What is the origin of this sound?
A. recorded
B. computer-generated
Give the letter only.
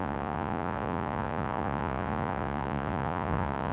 B